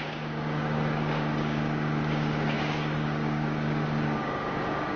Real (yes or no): no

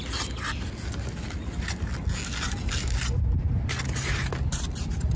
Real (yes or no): yes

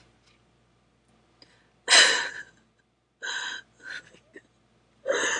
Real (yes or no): yes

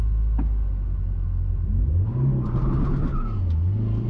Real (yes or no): yes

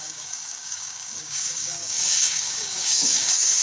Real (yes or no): no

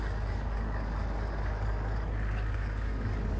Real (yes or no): no